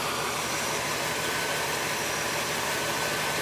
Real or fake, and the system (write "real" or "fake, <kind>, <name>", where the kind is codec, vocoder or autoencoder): real